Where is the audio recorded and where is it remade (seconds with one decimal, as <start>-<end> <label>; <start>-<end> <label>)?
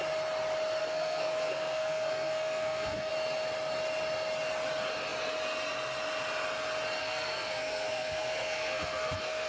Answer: 0.0-0.8 recorded; 0.8-3.1 remade; 3.1-7.0 recorded; 7.0-9.5 remade